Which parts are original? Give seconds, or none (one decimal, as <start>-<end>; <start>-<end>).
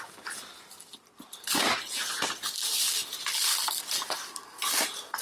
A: 0.0-3.0